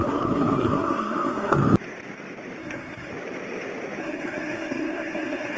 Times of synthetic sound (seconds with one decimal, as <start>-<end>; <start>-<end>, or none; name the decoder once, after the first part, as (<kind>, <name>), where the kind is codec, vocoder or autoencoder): 0.0-1.6 (codec, SNAC); 2.6-3.1; 4.0-5.6